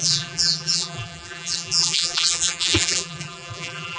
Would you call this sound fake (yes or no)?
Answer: yes